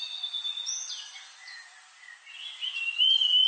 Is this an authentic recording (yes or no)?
yes